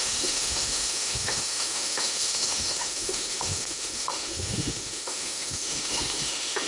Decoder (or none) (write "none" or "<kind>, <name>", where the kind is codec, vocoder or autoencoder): autoencoder, DAC-VAE